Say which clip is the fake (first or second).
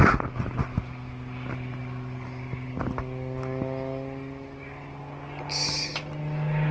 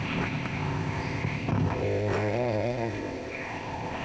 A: second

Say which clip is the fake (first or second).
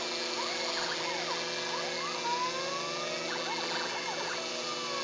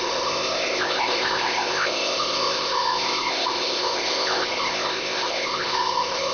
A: second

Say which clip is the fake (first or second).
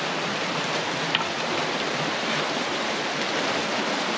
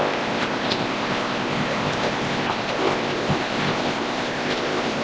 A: second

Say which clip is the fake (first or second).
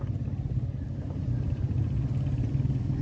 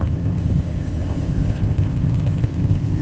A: second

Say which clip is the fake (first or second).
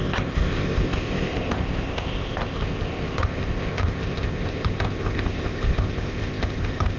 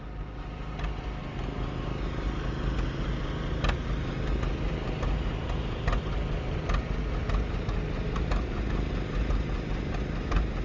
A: first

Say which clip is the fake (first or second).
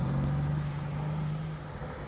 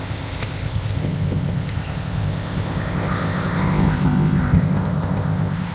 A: second